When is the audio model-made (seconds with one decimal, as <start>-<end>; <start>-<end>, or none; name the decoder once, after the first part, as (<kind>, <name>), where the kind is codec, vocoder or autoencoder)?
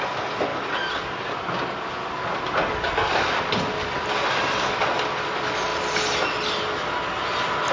none